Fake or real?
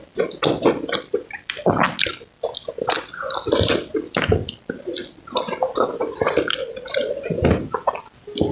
real